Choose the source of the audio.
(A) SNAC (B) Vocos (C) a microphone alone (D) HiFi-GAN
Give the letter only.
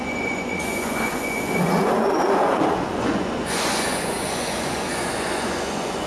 B